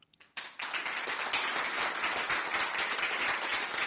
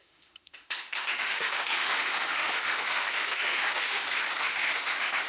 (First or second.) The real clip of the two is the first